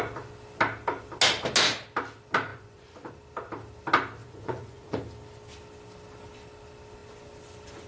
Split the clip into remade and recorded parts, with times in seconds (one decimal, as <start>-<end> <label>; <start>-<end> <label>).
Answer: 0.0-2.5 recorded; 2.5-3.1 remade; 3.1-4.2 recorded; 4.2-5.0 remade; 5.0-7.9 recorded